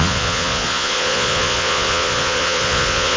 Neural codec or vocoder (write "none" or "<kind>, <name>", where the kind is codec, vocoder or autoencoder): vocoder, Vocos